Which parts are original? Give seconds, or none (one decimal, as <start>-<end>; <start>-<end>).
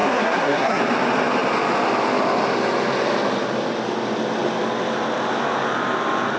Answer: 0.8-6.4